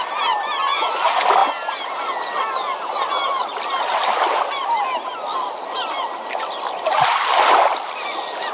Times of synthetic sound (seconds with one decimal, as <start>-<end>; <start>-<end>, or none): none